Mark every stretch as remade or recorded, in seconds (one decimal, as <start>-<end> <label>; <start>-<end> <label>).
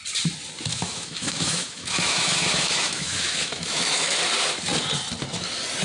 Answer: 0.0-0.7 recorded; 0.7-4.2 remade; 4.2-5.8 recorded